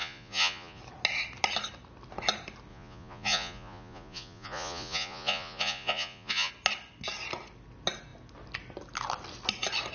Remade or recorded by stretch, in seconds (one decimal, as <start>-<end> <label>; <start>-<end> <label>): 0.0-0.8 remade; 0.8-2.7 recorded; 2.7-6.5 remade; 6.5-9.9 recorded